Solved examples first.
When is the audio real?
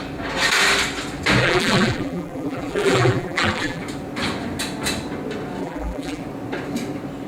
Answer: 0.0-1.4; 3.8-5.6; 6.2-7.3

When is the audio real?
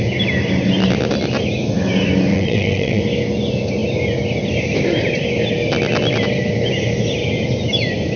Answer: 0.0-2.3; 3.0-8.2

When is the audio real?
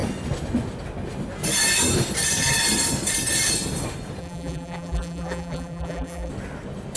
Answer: 0.0-4.2; 6.3-7.0